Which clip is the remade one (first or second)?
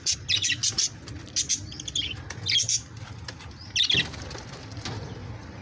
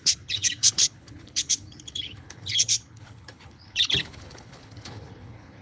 second